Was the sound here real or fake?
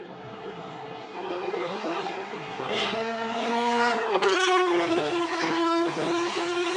fake